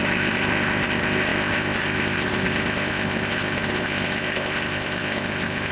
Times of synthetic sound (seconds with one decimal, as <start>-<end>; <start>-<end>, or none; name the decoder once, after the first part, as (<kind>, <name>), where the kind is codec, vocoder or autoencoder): 0.0-5.7 (codec, ZipCodec)